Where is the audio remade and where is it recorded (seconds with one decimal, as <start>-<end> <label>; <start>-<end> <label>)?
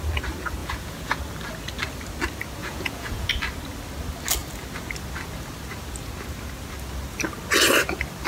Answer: 0.0-0.6 recorded; 0.6-1.2 remade; 1.2-2.6 recorded; 2.6-3.3 remade; 3.3-8.3 recorded